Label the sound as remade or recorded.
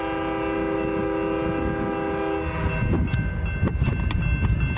recorded